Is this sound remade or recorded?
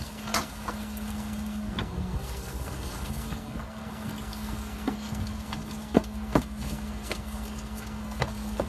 remade